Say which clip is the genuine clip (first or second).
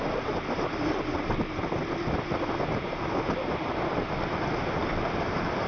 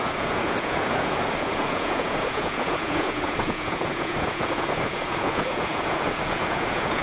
first